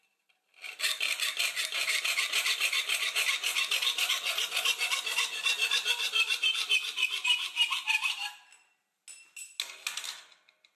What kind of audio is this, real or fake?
real